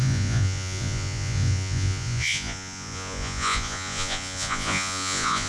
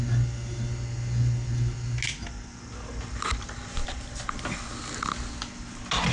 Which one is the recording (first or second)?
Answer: second